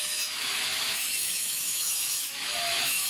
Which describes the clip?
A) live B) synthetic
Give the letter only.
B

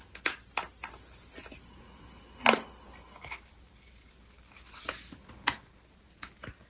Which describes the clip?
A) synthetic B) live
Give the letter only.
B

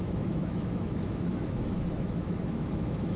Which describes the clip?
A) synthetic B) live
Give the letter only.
A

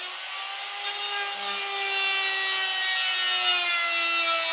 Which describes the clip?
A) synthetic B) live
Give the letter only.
B